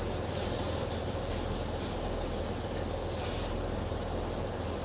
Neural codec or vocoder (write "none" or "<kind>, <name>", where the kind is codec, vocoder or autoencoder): none